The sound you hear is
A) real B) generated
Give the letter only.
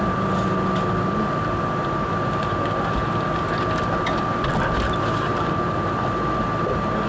A